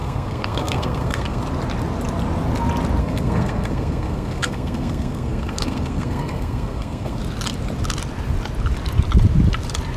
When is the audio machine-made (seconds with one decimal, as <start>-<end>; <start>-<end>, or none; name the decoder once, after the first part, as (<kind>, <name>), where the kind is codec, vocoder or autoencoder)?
0.0-1.4 (codec, SNAC); 3.0-7.2